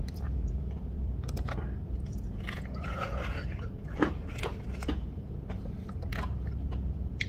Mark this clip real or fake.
fake